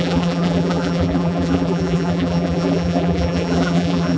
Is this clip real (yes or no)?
no